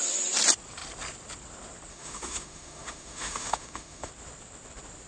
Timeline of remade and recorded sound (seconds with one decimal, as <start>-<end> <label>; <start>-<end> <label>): 0.0-1.9 recorded; 1.9-4.1 remade; 4.1-5.1 recorded